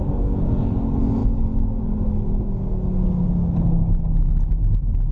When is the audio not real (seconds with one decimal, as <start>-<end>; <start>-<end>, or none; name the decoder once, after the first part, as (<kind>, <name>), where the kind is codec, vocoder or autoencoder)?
0.0-0.7 (codec, SNAC)